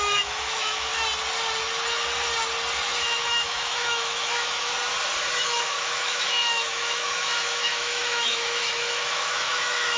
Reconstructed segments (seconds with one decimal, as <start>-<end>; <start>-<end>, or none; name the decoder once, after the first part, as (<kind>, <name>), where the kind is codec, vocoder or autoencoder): 0.0-0.9 (autoencoder, DAC-VAE); 3.0-4.7; 5.3-10.0